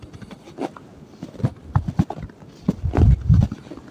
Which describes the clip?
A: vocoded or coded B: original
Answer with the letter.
B